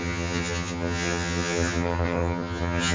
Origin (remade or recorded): remade